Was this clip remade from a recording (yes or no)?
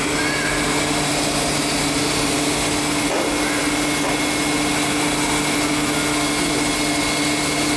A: no